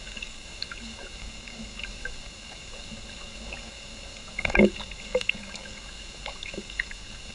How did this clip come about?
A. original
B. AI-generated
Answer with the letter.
B